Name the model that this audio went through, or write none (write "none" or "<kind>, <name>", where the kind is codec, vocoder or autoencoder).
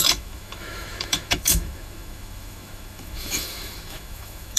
autoencoder, DAC-VAE